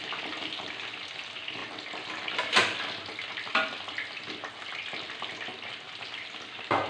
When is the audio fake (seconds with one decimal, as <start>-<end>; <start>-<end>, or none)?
none